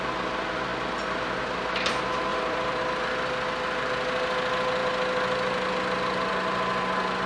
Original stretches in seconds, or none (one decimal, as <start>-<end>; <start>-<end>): 0.0-2.3; 2.8-7.3